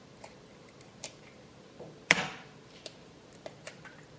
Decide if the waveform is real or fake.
fake